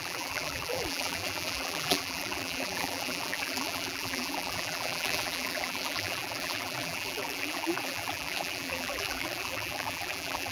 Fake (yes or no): yes